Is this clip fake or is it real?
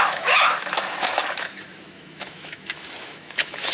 fake